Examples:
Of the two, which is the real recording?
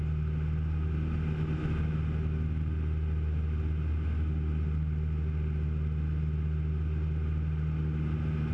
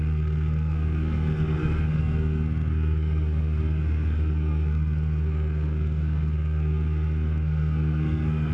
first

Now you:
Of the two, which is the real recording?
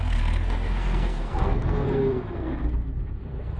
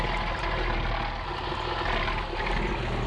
second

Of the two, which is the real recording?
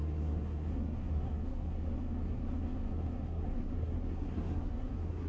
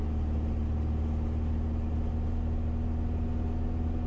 second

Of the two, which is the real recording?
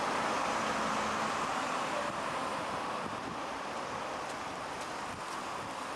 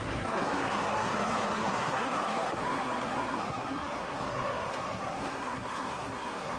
first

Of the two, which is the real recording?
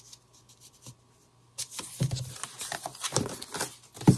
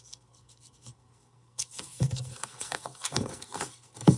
first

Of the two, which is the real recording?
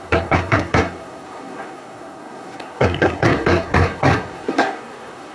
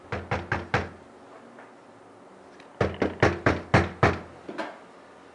second